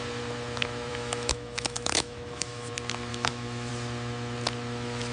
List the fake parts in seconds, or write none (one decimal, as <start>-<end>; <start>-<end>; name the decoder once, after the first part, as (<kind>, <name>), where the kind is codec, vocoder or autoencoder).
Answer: 0.9-2.7 (autoencoder, DAC-VAE); 3.1-3.7